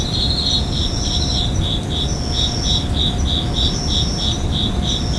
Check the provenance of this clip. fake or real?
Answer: real